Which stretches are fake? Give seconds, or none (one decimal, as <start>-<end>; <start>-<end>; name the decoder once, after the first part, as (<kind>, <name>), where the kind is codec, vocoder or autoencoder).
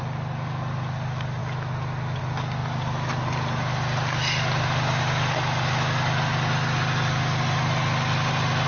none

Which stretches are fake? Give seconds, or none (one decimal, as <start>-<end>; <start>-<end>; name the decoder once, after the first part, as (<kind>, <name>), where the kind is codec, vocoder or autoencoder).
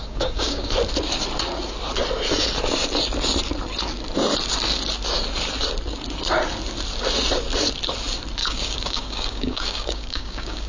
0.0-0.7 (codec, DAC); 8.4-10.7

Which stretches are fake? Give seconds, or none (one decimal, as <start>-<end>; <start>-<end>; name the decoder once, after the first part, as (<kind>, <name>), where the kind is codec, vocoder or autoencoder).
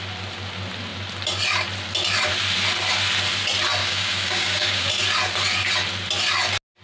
3.8-4.9 (codec, DAC)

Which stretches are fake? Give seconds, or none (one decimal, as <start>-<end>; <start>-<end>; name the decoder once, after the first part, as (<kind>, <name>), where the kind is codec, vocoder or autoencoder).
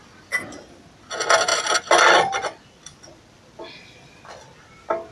none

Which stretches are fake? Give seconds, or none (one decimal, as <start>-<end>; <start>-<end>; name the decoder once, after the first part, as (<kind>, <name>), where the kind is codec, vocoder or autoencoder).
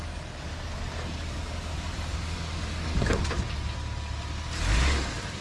0.0-0.5 (codec, DAC); 1.1-2.9